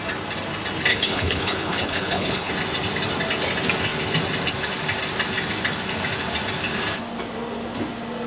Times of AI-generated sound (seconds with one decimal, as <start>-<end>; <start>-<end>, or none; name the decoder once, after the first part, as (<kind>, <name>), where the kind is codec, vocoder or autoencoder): 0.9-2.5 (codec, HILCodec)